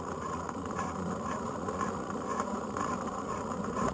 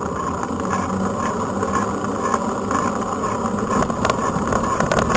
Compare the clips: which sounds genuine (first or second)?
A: second